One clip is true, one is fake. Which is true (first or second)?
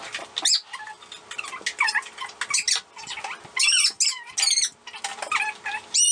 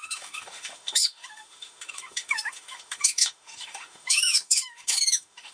first